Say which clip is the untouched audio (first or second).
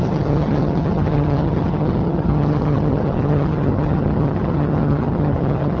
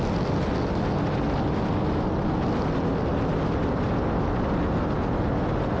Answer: second